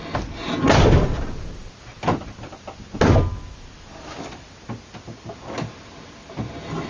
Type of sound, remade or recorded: recorded